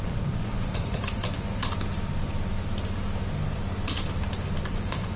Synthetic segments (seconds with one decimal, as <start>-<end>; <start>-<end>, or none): 0.0-1.6; 4.7-5.2

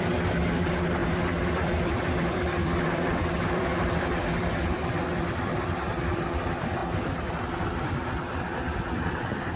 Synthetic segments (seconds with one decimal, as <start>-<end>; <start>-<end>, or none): 1.0-4.3

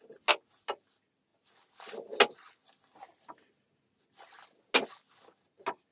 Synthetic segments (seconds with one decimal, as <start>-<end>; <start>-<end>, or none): none

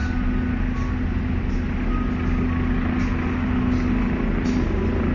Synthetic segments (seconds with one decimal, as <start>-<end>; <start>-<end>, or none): none